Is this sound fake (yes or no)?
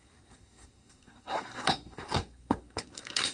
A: yes